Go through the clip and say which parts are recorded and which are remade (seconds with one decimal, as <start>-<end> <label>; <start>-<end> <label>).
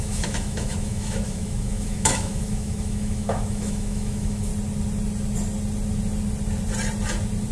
0.0-4.5 remade; 4.5-7.5 recorded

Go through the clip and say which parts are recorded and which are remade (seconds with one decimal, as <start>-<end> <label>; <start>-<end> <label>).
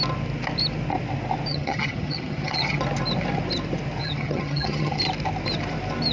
0.0-1.5 recorded; 1.5-2.8 remade; 2.8-4.0 recorded; 4.0-5.0 remade; 5.0-6.1 recorded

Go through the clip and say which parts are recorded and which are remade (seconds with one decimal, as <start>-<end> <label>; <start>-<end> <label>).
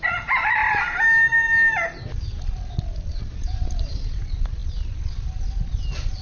0.0-6.2 recorded